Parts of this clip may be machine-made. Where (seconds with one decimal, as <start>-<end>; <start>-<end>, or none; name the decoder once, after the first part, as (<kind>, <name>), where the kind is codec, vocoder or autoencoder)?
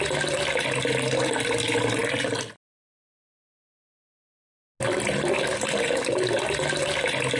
none